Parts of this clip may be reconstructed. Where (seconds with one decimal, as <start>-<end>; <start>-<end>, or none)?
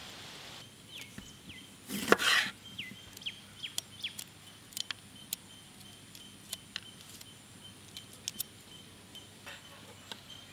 none